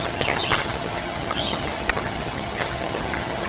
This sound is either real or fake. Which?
fake